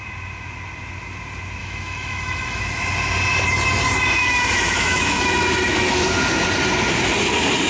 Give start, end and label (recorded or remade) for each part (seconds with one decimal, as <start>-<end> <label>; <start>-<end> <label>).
0.0-1.6 recorded; 1.6-2.6 remade; 2.6-4.2 recorded; 4.2-6.0 remade; 6.0-7.7 recorded